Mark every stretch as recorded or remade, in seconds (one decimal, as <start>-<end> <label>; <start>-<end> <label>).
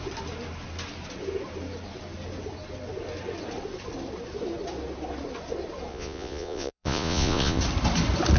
0.0-5.9 recorded; 5.9-7.6 remade; 7.6-8.4 recorded